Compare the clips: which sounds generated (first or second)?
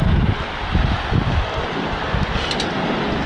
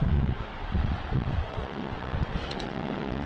second